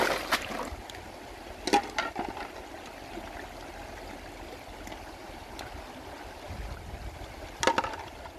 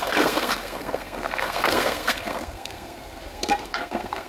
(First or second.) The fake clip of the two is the second